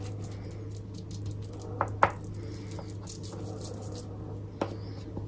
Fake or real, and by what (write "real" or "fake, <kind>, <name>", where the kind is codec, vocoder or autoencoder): real